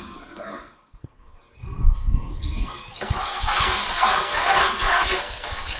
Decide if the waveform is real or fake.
fake